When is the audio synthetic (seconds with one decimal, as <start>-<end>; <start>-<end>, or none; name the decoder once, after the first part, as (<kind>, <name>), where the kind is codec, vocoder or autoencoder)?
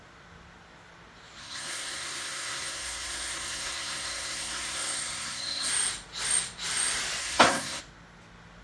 1.4-5.7 (codec, SNAC); 7.2-7.8